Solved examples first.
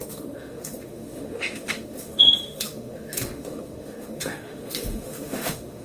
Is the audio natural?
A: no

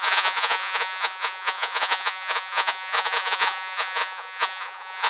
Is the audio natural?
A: no